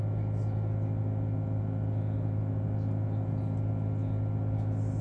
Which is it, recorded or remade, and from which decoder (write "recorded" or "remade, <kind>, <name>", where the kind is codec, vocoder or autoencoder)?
recorded